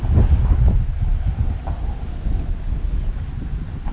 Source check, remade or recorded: recorded